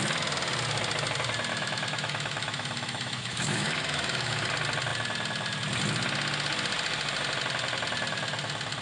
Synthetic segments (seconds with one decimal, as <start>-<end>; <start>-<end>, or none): 1.5-4.5